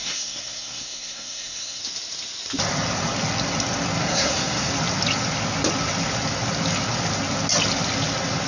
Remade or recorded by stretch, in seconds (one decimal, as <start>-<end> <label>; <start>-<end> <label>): 0.0-1.8 remade; 1.8-4.0 recorded; 4.0-4.7 remade; 4.7-8.5 recorded